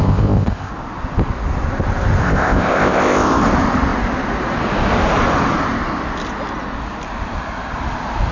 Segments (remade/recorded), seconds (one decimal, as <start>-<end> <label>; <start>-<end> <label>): 0.0-0.7 remade; 0.7-2.2 recorded; 2.2-3.4 remade; 3.4-8.3 recorded